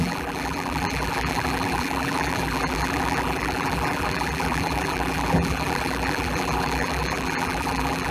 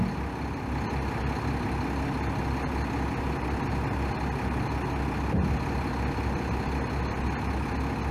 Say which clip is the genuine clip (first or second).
second